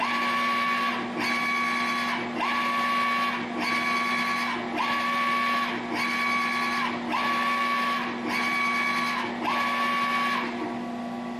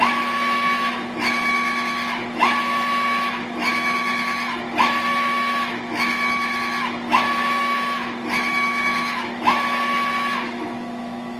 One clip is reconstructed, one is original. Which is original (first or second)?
first